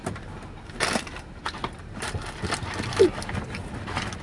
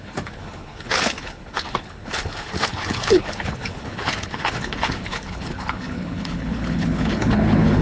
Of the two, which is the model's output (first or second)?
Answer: second